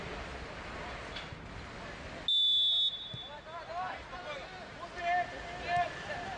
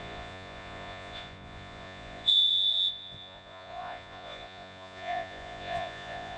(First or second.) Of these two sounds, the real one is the first